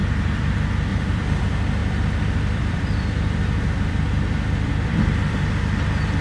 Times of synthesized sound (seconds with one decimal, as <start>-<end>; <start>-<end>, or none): 0.0-0.5; 0.9-1.4; 1.8-5.5